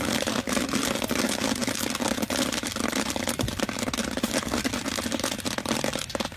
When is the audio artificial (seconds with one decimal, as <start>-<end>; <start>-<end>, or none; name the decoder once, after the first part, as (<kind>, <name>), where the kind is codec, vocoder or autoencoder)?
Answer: none